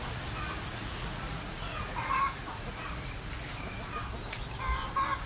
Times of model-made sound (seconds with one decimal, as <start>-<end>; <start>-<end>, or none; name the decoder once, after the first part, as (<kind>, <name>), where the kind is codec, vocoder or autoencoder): 0.7-2.9 (vocoder, Vocos)